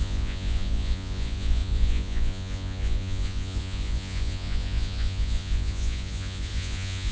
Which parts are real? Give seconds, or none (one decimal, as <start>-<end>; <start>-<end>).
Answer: none